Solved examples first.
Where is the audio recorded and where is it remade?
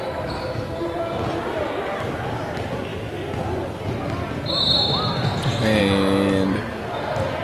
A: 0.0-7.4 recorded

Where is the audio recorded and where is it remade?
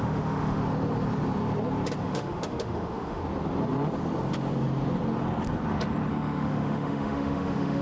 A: 0.0-0.6 remade; 0.6-2.0 recorded; 2.0-3.2 remade; 3.2-6.1 recorded; 6.1-7.8 remade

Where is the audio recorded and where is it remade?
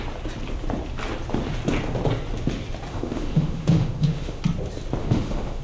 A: 0.0-2.9 recorded; 2.9-4.4 remade; 4.4-5.0 recorded; 5.0-5.6 remade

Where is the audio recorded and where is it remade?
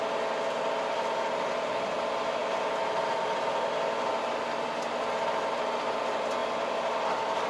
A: 0.0-7.5 recorded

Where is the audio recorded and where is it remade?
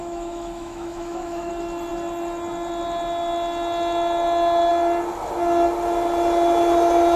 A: 0.0-1.5 remade; 1.5-7.2 recorded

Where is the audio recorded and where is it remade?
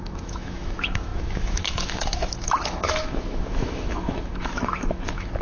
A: 0.0-5.4 remade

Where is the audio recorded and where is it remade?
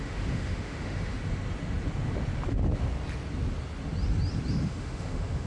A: 0.0-1.2 remade; 1.2-4.5 recorded; 4.5-5.5 remade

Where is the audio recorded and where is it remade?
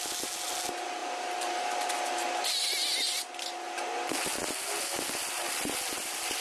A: 0.0-6.4 recorded